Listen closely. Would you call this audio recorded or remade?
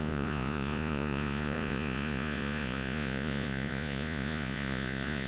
remade